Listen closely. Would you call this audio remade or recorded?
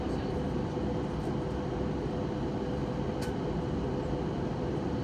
recorded